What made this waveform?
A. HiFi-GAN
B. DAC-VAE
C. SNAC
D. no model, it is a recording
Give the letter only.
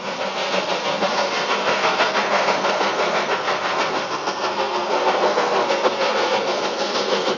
C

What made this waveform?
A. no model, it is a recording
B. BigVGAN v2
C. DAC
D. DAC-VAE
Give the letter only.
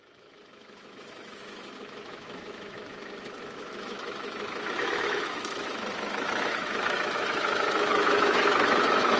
D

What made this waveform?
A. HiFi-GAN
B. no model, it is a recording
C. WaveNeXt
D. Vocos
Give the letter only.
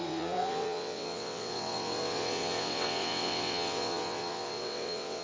C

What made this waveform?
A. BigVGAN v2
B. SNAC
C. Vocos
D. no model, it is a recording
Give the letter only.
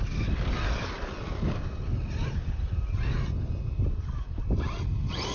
D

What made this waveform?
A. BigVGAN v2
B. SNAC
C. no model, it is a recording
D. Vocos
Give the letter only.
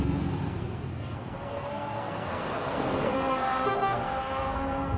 B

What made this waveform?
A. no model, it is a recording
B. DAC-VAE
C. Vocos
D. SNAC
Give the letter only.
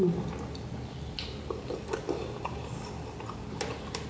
A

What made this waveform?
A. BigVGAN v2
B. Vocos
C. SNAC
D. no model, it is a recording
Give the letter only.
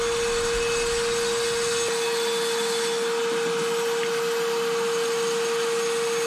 D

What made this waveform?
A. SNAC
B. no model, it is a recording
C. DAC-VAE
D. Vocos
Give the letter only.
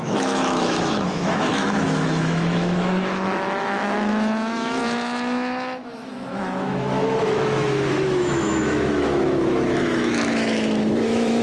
C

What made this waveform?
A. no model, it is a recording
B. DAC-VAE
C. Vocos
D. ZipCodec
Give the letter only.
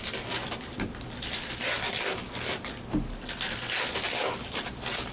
A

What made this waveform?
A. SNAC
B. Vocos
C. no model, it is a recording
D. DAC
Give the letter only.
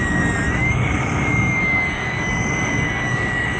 D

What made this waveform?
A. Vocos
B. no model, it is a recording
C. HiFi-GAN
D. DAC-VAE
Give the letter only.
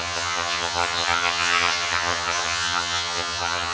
C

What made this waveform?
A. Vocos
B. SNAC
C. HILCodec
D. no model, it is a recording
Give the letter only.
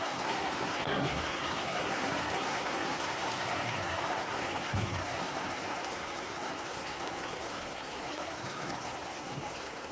B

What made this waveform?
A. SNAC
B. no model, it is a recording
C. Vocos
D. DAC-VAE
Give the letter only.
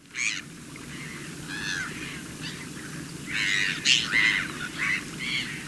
B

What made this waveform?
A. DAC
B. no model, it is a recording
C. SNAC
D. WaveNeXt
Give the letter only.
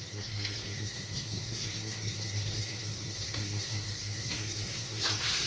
C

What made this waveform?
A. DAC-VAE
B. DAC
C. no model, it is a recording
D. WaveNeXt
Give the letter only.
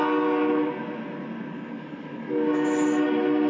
C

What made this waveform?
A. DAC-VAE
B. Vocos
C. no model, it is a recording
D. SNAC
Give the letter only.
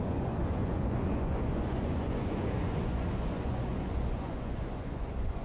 B